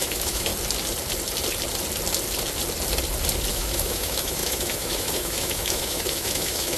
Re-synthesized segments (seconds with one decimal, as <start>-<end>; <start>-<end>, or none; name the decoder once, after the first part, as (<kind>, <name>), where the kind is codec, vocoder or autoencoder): 0.0-0.5 (autoencoder, DAC-VAE); 3.5-6.8